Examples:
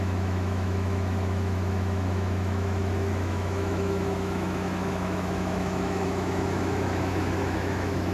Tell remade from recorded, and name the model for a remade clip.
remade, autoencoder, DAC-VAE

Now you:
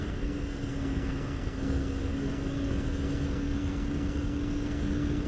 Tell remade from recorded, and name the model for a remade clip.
remade, codec, SNAC